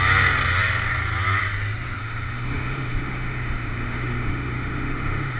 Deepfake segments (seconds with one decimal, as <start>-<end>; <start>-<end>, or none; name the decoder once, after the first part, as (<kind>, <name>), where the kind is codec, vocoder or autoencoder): 2.0-5.4 (autoencoder, DAC-VAE)